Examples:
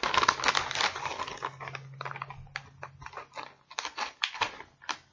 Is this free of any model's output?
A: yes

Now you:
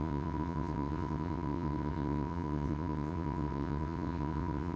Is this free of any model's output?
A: no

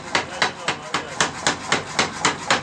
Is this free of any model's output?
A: yes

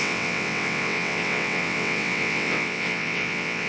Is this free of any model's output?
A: no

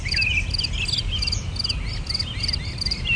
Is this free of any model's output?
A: yes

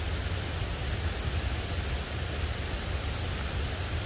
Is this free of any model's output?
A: yes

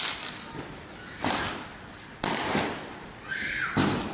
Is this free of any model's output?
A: yes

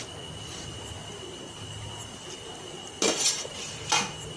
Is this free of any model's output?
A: yes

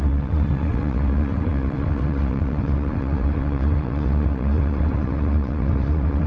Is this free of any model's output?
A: no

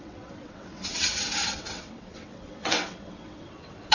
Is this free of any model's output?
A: no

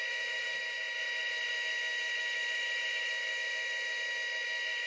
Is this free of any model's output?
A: yes